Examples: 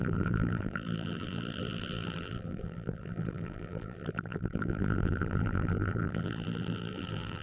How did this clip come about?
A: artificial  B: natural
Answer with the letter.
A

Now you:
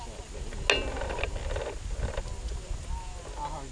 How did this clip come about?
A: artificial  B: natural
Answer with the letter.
B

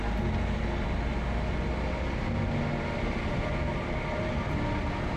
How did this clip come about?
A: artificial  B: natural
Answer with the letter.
B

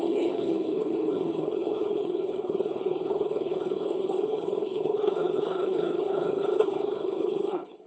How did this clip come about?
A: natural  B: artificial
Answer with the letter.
B